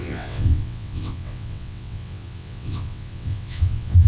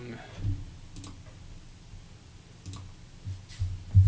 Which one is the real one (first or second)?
second